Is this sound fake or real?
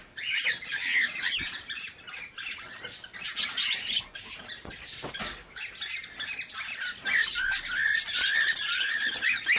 real